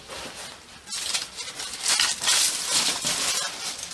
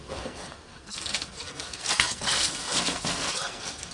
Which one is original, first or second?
first